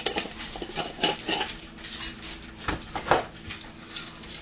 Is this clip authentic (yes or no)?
yes